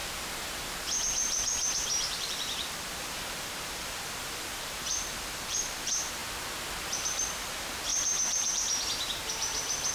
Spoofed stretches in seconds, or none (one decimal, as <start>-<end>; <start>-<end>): 1.0-6.2; 7.0-9.9